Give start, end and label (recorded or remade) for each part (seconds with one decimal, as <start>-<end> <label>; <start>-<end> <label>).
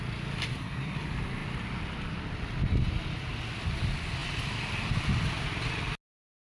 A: 0.0-0.5 recorded; 0.5-1.0 remade; 1.0-6.4 recorded